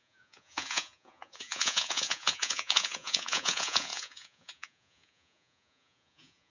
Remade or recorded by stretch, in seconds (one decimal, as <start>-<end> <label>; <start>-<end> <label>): 0.0-6.5 remade